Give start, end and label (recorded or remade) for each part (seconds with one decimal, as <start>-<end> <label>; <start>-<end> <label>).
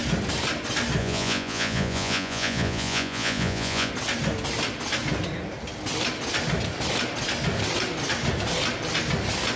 0.0-1.0 recorded; 1.0-3.9 remade; 3.9-9.6 recorded